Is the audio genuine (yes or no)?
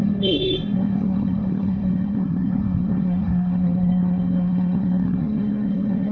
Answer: no